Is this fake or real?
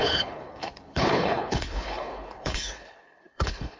fake